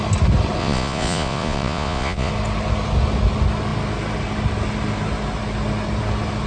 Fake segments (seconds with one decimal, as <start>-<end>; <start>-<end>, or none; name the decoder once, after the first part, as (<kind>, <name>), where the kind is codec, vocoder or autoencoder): 0.6-2.3 (vocoder, Vocos)

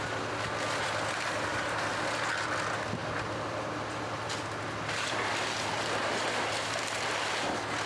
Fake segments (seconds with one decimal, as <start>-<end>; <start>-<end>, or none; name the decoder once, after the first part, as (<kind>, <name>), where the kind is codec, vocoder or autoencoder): none

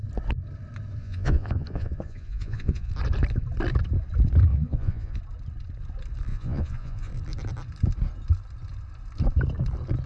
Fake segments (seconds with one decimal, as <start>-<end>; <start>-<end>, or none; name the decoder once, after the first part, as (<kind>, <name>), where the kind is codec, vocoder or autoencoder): 1.0-2.9 (vocoder, Vocos); 4.5-5.2; 6.3-7.1